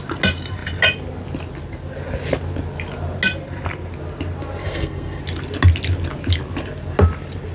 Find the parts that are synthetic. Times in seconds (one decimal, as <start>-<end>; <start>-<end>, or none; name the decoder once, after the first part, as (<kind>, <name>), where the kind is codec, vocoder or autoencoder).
4.6-5.2 (codec, SNAC)